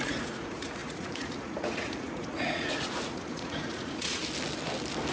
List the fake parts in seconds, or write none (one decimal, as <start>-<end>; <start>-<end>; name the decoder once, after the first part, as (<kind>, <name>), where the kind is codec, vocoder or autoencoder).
0.0-4.2 (vocoder, Vocos)